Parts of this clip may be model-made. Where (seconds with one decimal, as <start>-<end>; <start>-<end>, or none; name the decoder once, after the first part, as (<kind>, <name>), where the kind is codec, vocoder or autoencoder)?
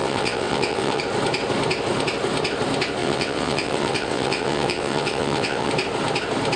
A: 0.0-1.0 (vocoder, WaveNeXt); 3.0-5.7